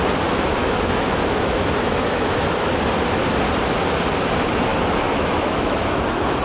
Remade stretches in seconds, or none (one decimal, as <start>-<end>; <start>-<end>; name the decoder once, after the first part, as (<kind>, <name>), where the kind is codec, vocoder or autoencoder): 0.6-2.5 (autoencoder, DAC-VAE); 4.7-6.0